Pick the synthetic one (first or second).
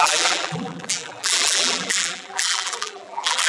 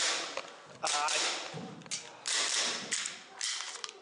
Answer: first